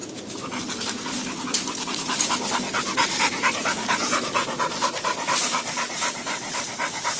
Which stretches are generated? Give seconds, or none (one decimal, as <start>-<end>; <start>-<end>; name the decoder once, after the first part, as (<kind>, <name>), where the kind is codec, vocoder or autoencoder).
0.0-0.6 (vocoder, BigVGAN v2); 2.9-6.1